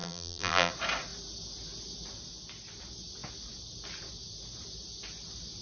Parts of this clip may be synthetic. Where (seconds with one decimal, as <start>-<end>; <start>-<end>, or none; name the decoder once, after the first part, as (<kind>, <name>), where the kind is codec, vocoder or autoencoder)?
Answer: 0.0-0.7 (vocoder, BigVGAN v2)

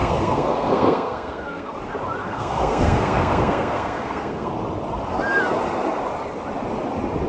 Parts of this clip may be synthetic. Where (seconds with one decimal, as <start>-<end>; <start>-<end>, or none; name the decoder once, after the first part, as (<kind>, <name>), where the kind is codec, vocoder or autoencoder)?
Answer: 0.0-1.8 (codec, SNAC); 2.2-4.5

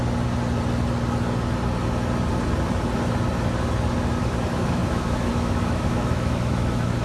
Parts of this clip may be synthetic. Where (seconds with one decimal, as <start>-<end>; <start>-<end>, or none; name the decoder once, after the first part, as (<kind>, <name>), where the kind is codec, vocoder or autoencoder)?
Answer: 4.2-7.0 (autoencoder, DAC-VAE)

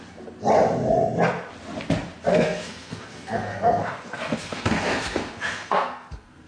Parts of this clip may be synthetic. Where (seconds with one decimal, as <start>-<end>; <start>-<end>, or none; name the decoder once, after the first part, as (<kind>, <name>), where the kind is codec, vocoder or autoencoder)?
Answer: 2.3-6.5 (codec, SNAC)

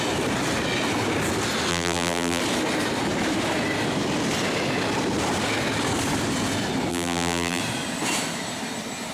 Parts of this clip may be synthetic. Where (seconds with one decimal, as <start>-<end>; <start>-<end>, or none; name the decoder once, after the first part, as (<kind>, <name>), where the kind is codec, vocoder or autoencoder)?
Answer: 1.7-2.4 (vocoder, BigVGAN v2); 6.9-7.6

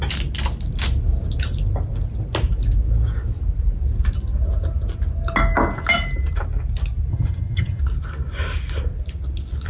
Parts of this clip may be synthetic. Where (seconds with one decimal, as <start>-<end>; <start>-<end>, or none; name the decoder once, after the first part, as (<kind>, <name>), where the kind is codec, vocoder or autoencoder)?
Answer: 7.1-7.8 (vocoder, HiFi-GAN)